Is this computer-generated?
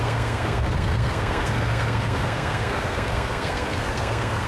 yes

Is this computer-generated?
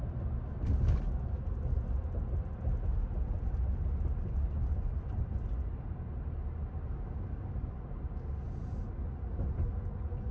no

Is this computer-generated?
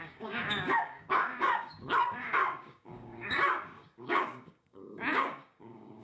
yes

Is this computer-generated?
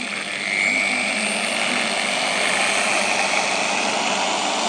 no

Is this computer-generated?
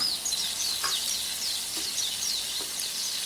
no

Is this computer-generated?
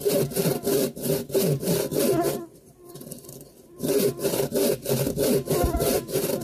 yes